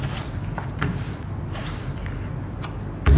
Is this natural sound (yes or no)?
yes